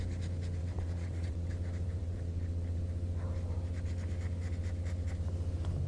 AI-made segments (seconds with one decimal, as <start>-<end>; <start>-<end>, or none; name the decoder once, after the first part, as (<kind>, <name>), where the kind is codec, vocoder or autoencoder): 0.6-1.5 (vocoder, WaveNeXt); 2.0-2.8